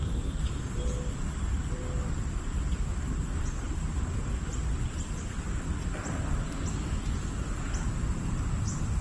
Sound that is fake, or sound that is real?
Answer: real